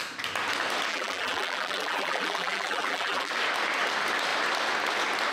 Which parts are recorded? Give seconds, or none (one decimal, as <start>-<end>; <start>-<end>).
0.0-0.9; 3.3-5.3